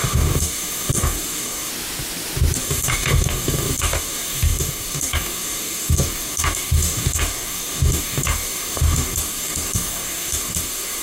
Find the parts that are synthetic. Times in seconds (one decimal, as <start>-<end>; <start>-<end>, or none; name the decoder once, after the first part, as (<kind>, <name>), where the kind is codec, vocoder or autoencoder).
0.0-1.7 (codec, DAC); 2.6-11.0